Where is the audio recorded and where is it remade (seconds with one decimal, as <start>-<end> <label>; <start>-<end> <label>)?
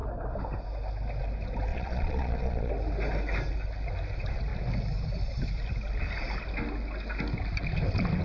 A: 0.0-1.7 recorded; 1.7-2.7 remade; 2.7-8.2 recorded